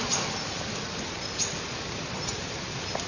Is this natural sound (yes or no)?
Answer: yes